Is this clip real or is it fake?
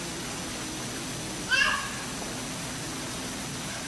real